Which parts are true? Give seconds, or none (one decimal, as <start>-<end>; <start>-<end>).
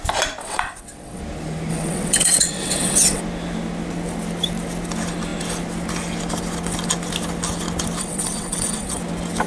0.0-0.4; 1.2-1.7; 3.2-8.0; 9.0-9.5